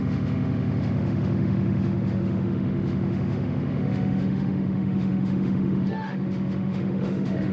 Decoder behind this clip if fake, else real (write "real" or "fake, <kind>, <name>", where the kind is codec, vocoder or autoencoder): fake, autoencoder, DAC-VAE